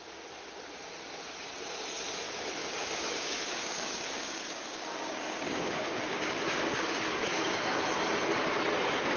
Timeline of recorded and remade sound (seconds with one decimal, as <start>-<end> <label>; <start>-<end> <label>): 0.0-2.6 recorded; 2.6-7.8 remade; 7.8-9.2 recorded